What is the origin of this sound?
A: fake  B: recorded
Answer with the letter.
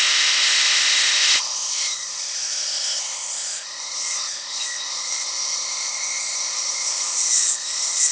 A